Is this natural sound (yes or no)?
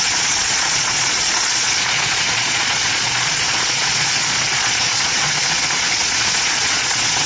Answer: no